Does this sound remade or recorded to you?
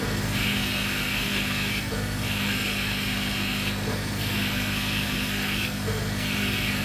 remade